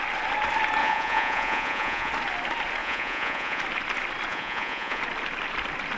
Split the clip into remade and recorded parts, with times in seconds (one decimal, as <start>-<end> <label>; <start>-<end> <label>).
0.0-0.8 recorded; 0.8-2.1 remade; 2.1-2.8 recorded; 2.8-3.6 remade; 3.6-4.3 recorded; 4.3-5.0 remade; 5.0-6.0 recorded